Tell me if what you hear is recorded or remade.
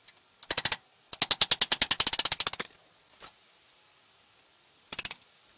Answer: recorded